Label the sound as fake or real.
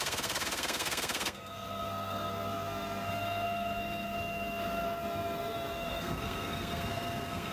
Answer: fake